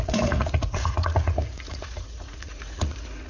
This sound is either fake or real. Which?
fake